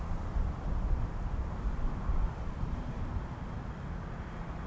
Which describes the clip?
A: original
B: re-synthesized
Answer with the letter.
A